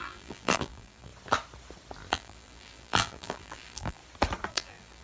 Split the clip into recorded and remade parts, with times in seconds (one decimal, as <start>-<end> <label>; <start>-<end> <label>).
0.0-1.1 remade; 1.1-2.1 recorded; 2.1-4.0 remade; 4.0-4.5 recorded; 4.5-5.0 remade